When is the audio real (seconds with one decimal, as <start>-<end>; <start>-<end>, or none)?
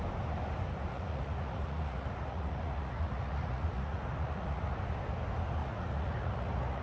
0.0-0.9; 4.8-5.6